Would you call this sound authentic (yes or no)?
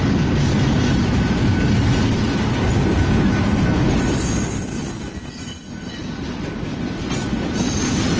yes